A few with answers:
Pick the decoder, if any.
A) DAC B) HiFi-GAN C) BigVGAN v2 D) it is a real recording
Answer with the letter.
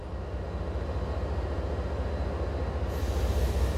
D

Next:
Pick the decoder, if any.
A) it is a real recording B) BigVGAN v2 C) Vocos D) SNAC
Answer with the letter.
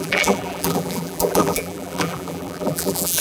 B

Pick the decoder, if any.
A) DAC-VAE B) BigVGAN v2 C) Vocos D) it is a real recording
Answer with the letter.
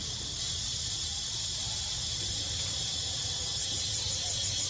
D